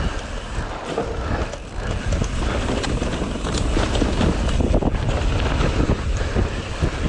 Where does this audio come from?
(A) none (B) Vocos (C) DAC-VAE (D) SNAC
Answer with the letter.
A